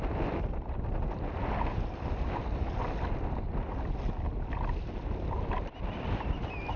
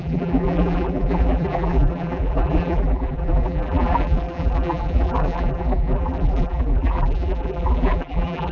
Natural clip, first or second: first